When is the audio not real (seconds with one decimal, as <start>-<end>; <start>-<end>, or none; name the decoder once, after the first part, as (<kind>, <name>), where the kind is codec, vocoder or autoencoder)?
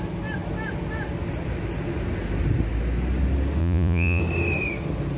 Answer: 3.6-4.2 (vocoder, Vocos)